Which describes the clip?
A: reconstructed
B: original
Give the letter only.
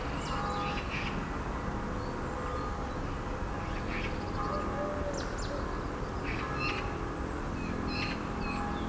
B